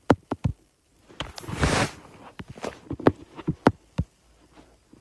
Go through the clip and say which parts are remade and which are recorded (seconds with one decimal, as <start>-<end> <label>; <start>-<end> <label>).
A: 0.0-5.0 remade